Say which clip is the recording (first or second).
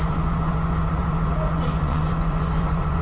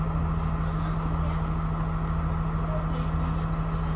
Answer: second